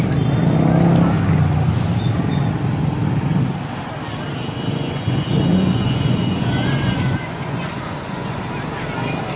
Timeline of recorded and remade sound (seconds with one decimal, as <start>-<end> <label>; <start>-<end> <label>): 0.0-4.7 recorded; 4.7-8.4 remade; 8.4-9.4 recorded